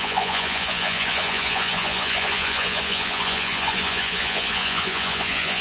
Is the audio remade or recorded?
remade